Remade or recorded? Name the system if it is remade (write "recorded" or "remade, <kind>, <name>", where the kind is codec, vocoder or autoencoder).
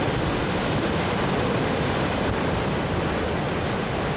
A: recorded